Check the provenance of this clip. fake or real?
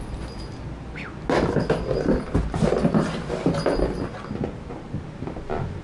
real